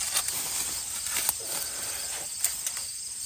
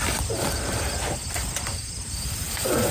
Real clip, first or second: first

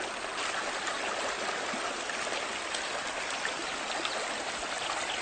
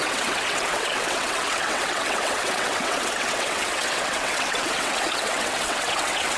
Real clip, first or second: first